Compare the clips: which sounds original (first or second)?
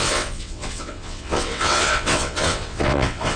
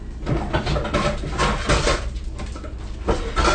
second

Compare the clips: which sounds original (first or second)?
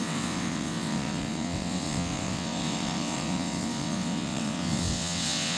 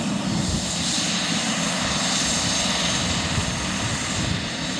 second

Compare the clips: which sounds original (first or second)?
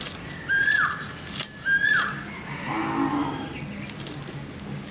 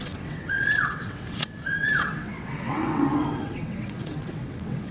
first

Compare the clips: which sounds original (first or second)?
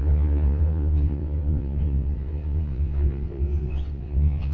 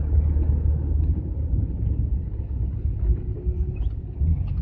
second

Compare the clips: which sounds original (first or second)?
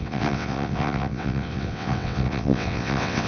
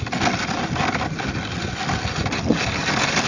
second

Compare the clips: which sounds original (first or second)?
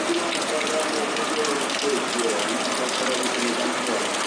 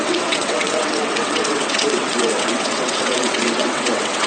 first